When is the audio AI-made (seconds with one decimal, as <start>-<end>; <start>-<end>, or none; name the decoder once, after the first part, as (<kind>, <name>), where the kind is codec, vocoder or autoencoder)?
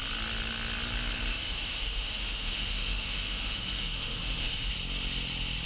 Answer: 1.3-4.7 (autoencoder, DAC-VAE)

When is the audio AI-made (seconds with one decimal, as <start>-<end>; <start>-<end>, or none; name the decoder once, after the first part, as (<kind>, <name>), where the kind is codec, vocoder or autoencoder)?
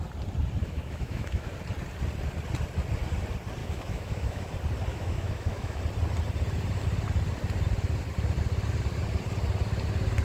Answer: 0.6-1.5 (autoencoder, DAC-VAE); 3.6-4.5; 4.9-5.8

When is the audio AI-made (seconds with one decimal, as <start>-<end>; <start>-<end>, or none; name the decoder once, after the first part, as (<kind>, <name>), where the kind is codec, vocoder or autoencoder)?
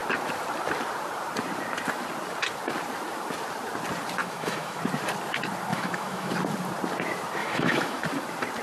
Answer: 4.2-4.8 (autoencoder, DAC-VAE); 5.7-6.3; 7.4-8.0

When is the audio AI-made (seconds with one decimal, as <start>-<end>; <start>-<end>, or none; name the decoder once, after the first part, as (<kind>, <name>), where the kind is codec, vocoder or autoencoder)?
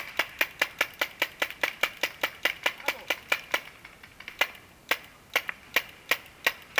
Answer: none